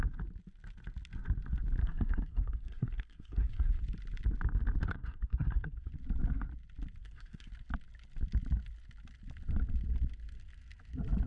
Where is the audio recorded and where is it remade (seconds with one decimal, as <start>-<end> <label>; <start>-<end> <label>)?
0.0-1.8 recorded; 1.8-3.8 remade; 3.8-4.9 recorded; 4.9-5.9 remade; 5.9-7.0 recorded; 7.0-7.5 remade; 7.5-11.3 recorded